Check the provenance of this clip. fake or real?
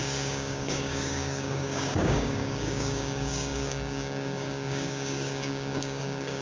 fake